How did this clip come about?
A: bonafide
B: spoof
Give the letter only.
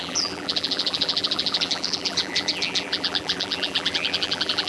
B